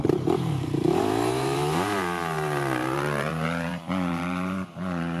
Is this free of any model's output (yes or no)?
no